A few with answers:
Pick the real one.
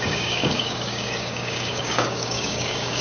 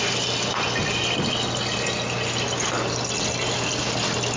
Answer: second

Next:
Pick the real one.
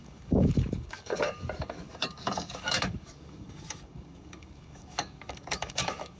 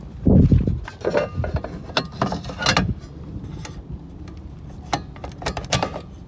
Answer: second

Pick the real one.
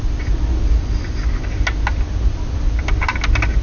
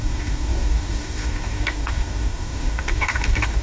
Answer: first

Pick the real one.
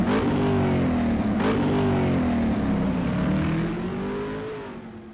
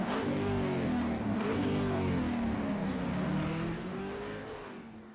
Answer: first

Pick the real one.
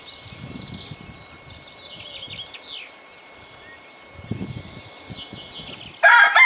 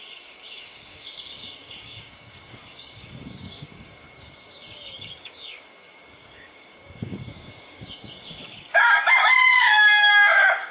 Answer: first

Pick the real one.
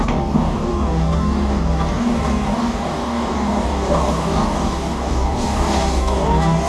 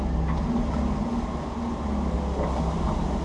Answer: second